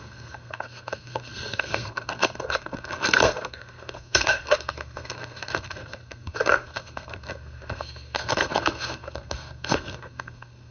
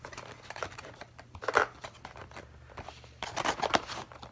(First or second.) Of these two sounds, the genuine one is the second